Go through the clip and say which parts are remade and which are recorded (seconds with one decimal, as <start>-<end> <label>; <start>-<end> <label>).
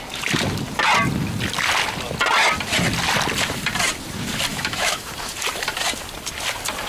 0.0-4.5 recorded; 4.5-5.1 remade; 5.1-6.9 recorded